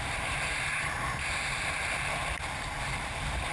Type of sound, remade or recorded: remade